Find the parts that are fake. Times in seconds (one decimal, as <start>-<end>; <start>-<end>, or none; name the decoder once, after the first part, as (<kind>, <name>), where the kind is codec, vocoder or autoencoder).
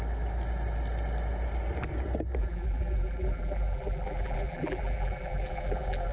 2.4-6.1 (vocoder, BigVGAN v2)